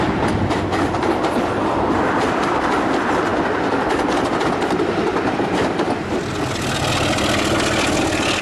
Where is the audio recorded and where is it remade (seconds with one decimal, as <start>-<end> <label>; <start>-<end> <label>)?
0.0-3.3 remade; 3.3-8.0 recorded; 8.0-8.4 remade